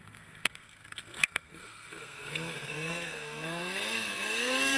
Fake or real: fake